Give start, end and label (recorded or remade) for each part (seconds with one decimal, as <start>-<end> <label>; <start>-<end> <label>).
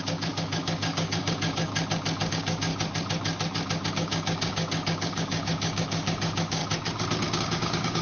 0.0-1.7 remade; 1.7-2.3 recorded; 2.3-2.7 remade; 2.7-3.9 recorded; 3.9-6.6 remade; 6.6-7.4 recorded; 7.4-8.0 remade